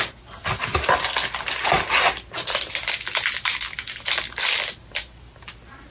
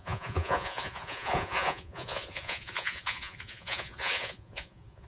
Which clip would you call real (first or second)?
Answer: first